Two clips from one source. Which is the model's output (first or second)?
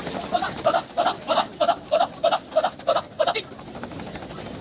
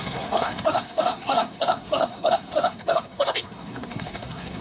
second